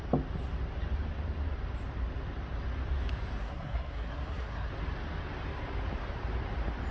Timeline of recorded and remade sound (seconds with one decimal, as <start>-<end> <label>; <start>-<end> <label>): 0.0-3.4 recorded; 3.4-4.7 remade; 4.7-6.9 recorded